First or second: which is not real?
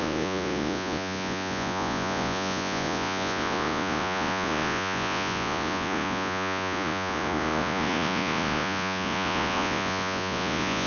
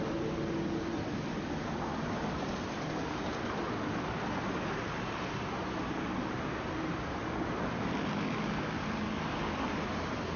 first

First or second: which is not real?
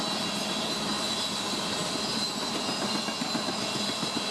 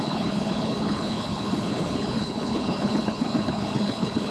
second